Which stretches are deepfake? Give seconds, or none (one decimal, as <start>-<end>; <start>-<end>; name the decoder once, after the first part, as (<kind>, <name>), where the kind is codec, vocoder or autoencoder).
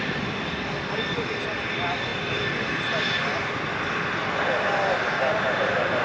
none